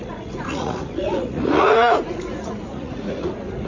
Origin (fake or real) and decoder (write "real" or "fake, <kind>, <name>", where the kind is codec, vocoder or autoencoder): fake, vocoder, Vocos